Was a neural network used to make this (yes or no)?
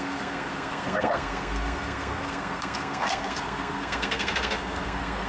yes